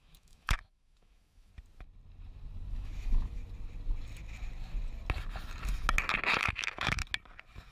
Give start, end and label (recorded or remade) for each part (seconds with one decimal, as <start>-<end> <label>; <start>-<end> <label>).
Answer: 0.0-1.5 remade; 1.5-2.7 recorded; 2.7-3.4 remade; 3.4-6.4 recorded; 6.4-7.0 remade; 7.0-7.7 recorded